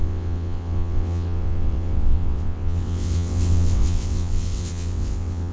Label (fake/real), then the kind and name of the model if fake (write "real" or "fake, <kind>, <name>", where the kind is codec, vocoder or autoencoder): fake, vocoder, WaveNeXt